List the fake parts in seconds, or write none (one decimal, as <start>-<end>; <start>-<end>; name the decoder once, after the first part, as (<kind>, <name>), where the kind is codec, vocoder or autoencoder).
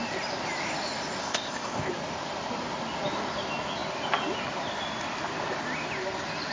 1.2-1.9 (codec, ZipCodec)